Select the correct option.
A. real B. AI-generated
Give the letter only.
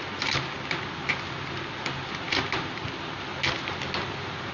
A